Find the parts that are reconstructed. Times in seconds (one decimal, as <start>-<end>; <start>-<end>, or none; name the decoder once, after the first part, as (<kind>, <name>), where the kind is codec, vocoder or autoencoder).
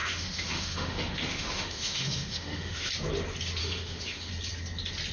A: 0.0-2.9 (autoencoder, DAC-VAE); 3.6-4.3